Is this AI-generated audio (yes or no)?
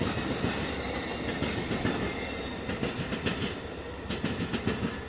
no